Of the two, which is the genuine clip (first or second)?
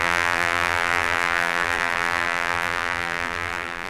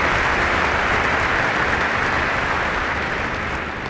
second